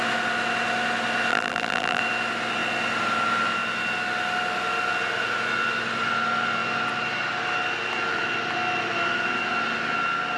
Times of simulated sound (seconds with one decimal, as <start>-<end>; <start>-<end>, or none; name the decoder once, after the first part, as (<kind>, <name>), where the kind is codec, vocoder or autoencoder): 1.3-2.0 (vocoder, BigVGAN v2)